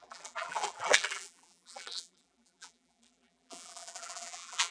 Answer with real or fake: fake